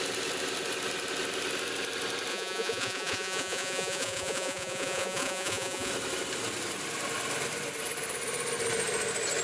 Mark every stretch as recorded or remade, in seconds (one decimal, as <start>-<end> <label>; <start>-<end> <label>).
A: 0.0-2.3 recorded; 2.3-5.9 remade; 5.9-9.4 recorded